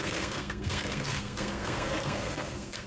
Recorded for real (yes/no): no